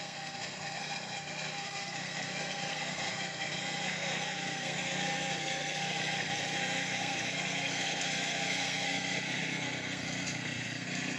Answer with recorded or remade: remade